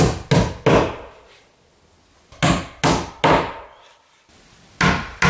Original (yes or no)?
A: yes